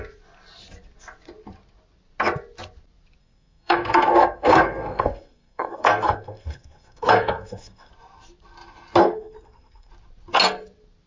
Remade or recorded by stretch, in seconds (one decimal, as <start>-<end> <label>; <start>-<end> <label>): 0.0-3.2 recorded; 3.2-7.9 remade; 7.9-9.0 recorded; 9.0-9.9 remade; 9.9-11.1 recorded